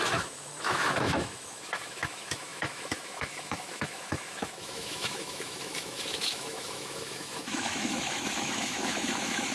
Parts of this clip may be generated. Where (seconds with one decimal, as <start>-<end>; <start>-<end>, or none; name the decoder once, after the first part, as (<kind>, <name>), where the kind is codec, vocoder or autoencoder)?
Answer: 0.0-9.5 (autoencoder, DAC-VAE)